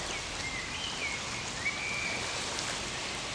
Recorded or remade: recorded